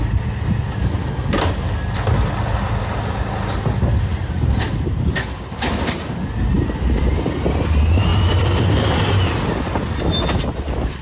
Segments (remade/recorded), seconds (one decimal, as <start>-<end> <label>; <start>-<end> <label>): 0.0-4.1 recorded; 4.1-4.9 remade; 4.9-8.1 recorded; 8.1-9.2 remade; 9.2-11.0 recorded